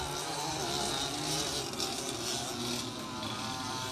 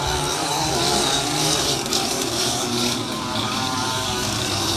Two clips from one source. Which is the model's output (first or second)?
second